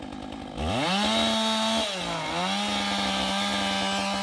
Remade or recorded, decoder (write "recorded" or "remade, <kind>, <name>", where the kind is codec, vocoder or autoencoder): recorded